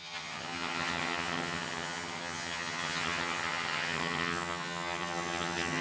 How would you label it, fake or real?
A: fake